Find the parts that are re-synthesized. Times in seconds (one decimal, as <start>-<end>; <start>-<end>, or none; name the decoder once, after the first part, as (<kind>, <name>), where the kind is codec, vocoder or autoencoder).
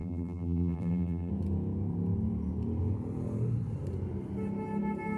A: 0.0-1.3 (vocoder, BigVGAN v2)